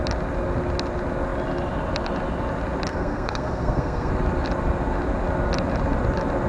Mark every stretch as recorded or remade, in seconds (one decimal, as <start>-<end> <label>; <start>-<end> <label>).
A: 0.0-2.9 recorded; 2.9-4.1 remade; 4.1-6.5 recorded